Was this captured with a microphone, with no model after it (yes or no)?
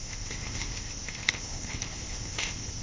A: no